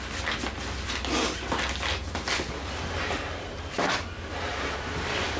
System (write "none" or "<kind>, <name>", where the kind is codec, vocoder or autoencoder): none